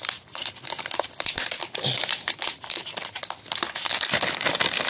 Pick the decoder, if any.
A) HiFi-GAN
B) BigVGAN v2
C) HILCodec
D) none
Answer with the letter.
D